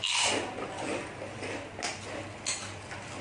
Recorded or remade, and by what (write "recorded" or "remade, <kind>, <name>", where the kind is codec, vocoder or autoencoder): recorded